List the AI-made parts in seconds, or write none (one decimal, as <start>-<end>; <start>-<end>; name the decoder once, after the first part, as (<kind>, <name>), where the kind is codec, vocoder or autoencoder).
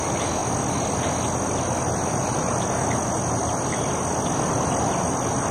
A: none